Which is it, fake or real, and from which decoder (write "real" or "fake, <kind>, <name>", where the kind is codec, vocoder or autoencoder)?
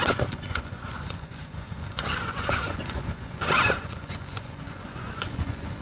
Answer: fake, vocoder, Vocos